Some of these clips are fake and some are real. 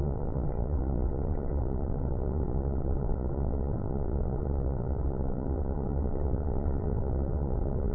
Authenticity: fake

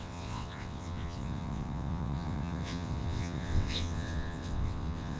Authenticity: fake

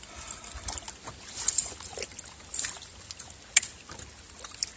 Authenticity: real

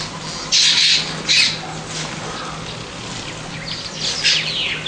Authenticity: real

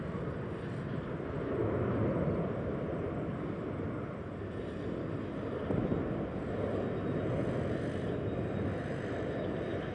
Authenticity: real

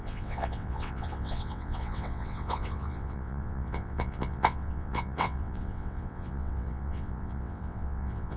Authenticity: fake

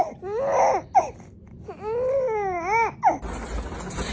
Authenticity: real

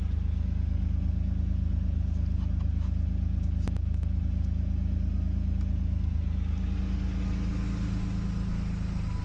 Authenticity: real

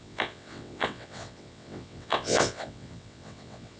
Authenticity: fake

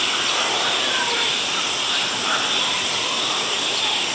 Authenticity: real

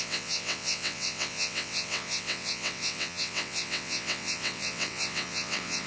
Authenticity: fake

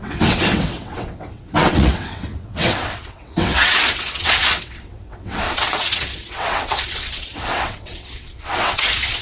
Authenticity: fake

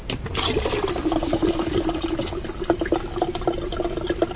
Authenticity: real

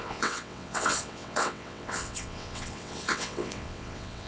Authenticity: fake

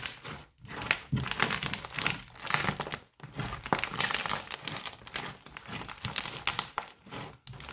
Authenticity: real